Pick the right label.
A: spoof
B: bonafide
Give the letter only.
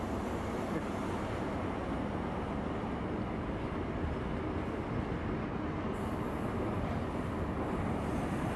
B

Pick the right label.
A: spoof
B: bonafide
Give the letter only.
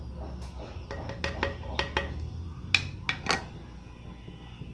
B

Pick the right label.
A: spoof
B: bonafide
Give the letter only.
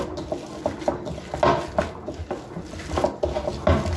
B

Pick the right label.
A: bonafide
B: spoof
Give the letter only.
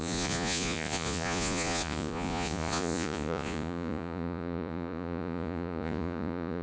B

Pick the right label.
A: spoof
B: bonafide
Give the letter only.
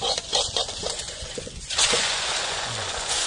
A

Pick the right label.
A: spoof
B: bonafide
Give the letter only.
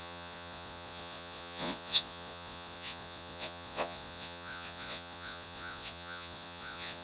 A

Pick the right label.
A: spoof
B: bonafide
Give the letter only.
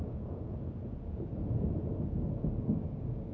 A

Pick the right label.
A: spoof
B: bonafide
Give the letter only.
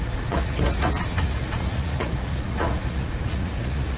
A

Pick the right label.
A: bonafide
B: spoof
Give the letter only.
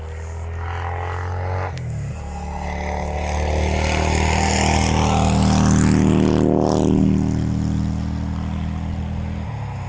A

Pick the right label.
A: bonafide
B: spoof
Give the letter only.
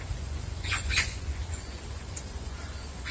B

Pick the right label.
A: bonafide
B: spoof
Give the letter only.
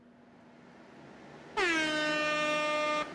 A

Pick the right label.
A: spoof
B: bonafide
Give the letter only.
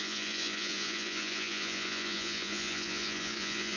A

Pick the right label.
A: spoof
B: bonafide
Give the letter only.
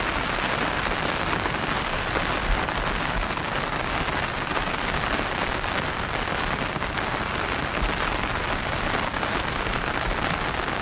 B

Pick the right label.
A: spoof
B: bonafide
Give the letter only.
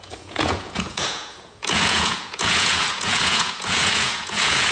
A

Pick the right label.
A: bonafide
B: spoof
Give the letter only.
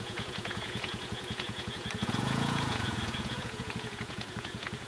B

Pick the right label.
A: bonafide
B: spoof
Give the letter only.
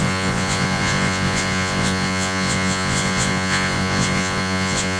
B